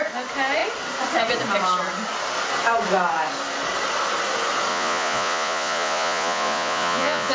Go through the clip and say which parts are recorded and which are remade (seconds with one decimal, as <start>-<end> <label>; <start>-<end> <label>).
0.0-4.7 recorded; 4.7-7.3 remade